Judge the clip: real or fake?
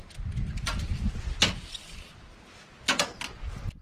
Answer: real